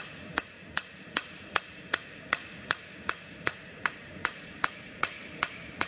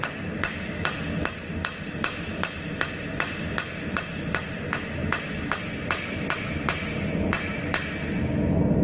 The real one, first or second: second